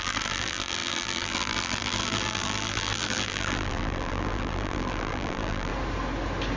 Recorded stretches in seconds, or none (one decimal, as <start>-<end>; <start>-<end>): 5.7-6.6